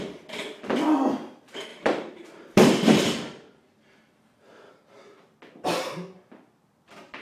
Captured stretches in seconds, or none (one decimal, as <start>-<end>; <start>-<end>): 0.0-1.7; 4.7-7.2